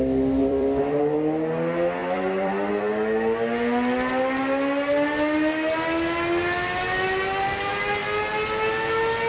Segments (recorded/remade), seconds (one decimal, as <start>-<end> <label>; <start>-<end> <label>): 0.0-0.4 recorded; 0.4-1.0 remade; 1.0-2.0 recorded; 2.0-2.7 remade; 2.7-9.3 recorded